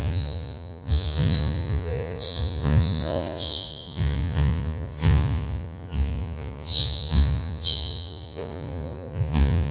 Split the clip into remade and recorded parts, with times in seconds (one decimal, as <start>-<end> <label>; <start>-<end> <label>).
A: 0.0-9.7 remade